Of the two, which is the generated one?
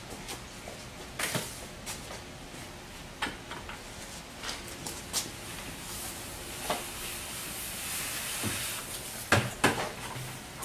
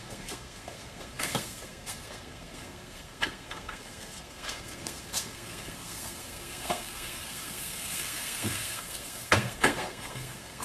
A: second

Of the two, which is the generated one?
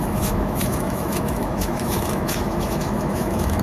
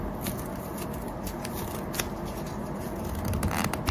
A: first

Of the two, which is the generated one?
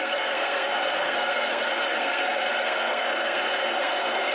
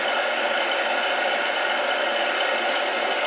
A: first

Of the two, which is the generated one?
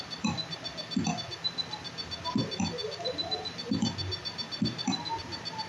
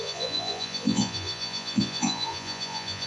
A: second